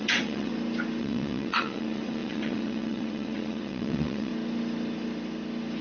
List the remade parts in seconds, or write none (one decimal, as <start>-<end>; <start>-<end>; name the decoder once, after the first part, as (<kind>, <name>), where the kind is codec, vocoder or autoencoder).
0.0-0.5 (vocoder, WaveNeXt); 1.0-4.3